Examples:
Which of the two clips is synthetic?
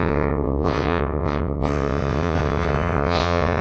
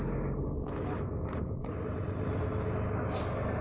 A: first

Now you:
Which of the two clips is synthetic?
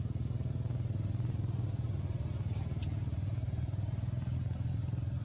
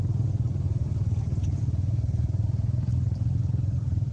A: second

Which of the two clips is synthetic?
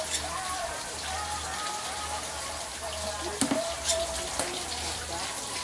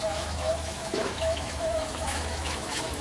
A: second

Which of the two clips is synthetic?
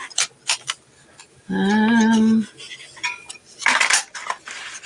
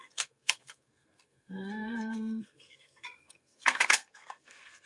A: second